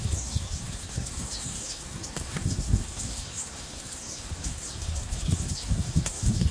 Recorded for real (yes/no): no